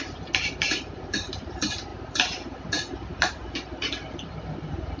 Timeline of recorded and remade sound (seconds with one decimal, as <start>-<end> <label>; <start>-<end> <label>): 0.0-5.0 remade